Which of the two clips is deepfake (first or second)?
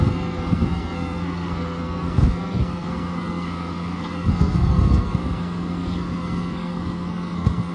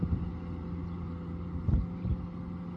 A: first